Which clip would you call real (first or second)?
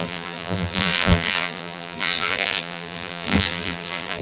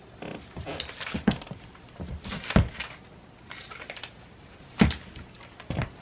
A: second